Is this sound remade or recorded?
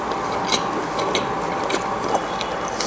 recorded